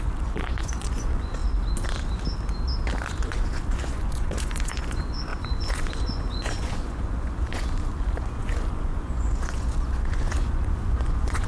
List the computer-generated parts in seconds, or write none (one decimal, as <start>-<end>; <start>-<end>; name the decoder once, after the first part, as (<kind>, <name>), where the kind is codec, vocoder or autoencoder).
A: 0.0-1.4 (vocoder, Vocos); 3.1-11.5